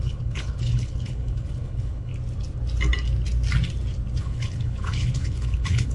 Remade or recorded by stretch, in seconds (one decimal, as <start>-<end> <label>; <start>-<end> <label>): 0.0-2.1 remade; 2.1-4.2 recorded; 4.2-5.9 remade